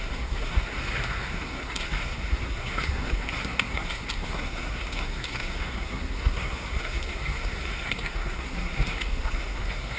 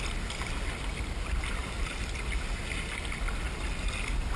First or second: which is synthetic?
first